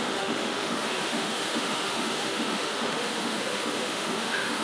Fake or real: fake